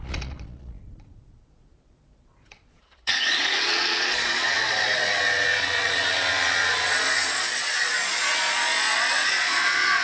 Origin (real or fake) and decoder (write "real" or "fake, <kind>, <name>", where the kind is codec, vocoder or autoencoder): fake, vocoder, Vocos